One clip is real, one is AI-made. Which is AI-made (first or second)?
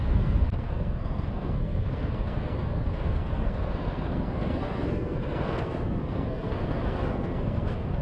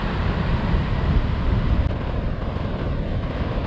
first